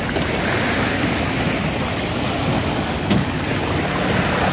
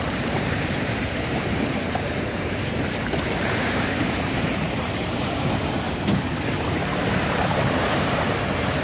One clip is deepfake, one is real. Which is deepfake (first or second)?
second